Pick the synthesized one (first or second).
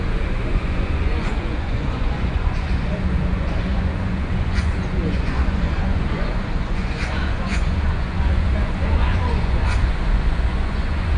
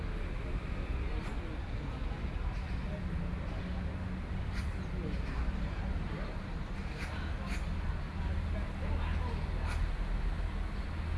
first